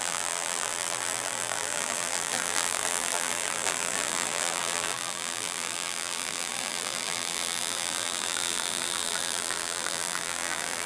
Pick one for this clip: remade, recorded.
remade